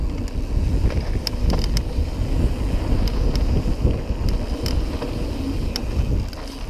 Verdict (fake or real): real